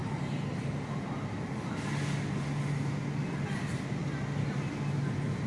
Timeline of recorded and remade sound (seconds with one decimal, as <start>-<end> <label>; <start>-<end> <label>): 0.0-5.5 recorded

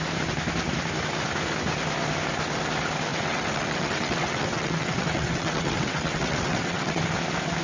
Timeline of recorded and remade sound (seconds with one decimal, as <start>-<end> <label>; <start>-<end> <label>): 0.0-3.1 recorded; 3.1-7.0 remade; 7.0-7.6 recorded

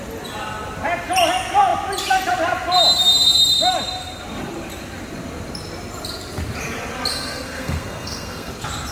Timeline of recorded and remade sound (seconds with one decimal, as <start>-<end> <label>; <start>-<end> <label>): 0.0-7.1 recorded; 7.1-8.5 remade; 8.5-8.9 recorded